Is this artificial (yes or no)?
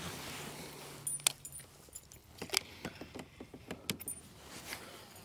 no